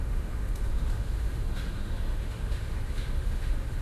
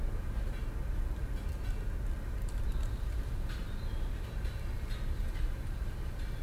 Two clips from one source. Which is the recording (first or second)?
second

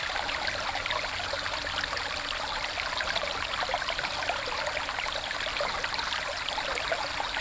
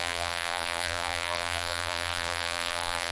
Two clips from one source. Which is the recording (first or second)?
first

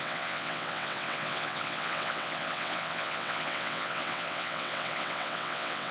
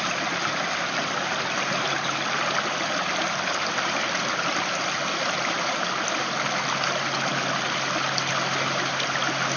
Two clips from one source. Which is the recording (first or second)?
second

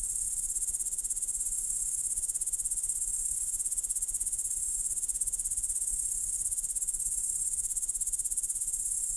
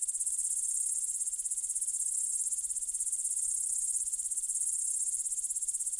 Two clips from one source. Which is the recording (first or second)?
second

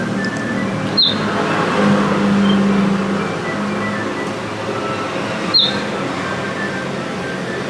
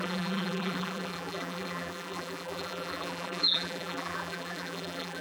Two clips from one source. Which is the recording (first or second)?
first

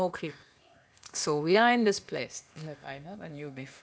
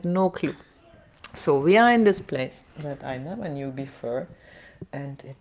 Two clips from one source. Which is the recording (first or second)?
second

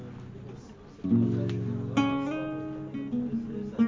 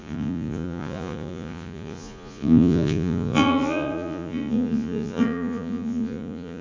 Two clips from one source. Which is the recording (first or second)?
first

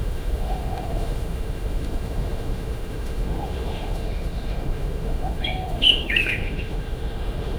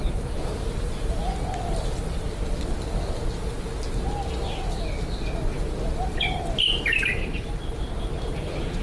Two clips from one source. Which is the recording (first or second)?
second